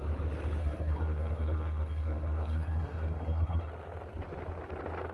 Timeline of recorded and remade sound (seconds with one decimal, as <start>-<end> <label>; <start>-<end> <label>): 0.0-0.6 recorded; 0.6-3.7 remade; 3.7-5.1 recorded